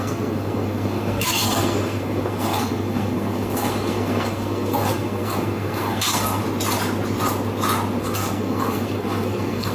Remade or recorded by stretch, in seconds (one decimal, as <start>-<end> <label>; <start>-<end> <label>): 0.0-6.4 remade; 6.4-8.0 recorded; 8.0-9.7 remade